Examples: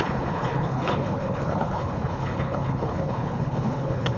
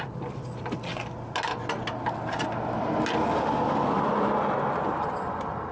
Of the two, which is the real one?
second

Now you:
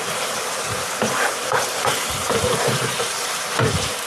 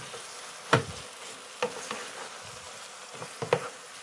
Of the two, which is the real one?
second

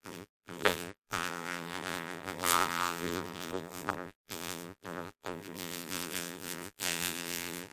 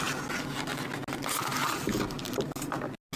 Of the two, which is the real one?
second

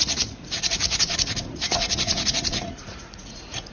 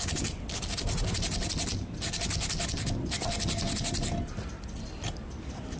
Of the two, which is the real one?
second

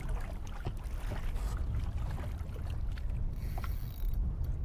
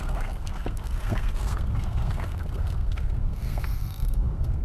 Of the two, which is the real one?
first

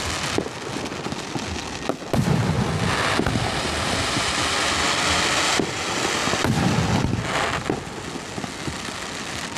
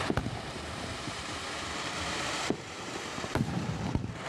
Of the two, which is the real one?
first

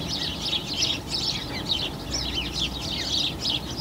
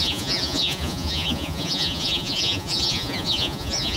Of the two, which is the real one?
first